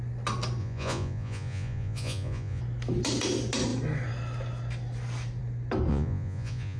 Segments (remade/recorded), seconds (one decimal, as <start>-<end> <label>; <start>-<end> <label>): 0.0-0.6 recorded; 0.6-2.6 remade; 2.6-5.9 recorded; 5.9-6.8 remade